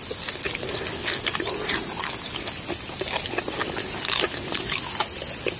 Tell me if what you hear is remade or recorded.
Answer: recorded